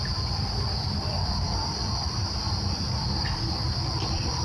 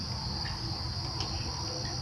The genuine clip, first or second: second